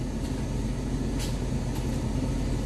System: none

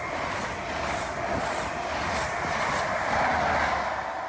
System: none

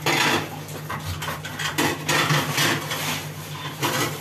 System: none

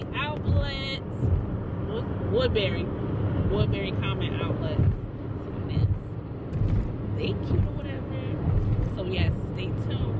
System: none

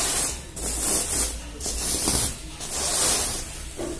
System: none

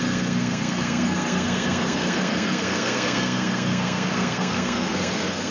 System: codec, SNAC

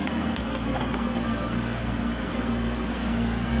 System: codec, SNAC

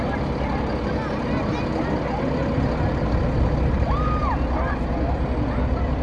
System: none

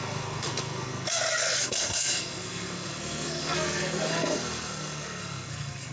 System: codec, SNAC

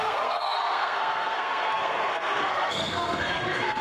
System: codec, SNAC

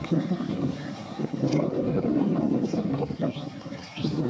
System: codec, SNAC